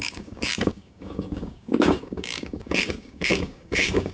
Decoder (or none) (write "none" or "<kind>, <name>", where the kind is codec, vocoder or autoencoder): codec, DAC